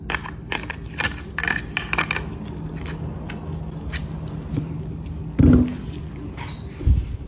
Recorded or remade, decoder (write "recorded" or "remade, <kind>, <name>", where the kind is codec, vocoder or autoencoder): recorded